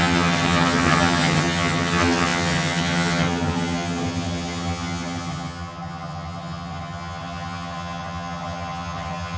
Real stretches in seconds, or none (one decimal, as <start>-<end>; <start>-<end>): none